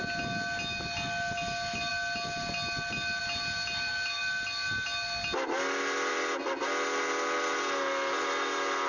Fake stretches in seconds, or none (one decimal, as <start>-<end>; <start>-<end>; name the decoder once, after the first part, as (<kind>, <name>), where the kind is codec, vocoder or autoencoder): none